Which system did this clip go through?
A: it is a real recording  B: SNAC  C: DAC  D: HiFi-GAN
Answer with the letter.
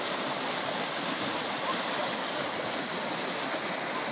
A